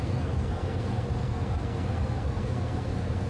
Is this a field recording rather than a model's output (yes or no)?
no